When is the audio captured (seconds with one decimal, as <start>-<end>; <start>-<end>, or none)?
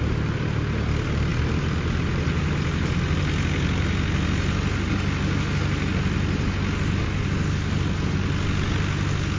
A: 0.0-9.4